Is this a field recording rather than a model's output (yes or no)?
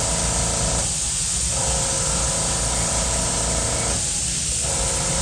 yes